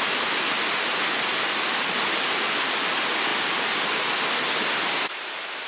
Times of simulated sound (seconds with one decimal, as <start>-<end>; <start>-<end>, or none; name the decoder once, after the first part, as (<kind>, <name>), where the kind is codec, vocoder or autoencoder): none